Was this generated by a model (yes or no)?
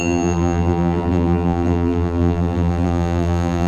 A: yes